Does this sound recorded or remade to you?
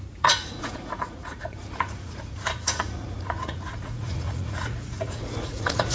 remade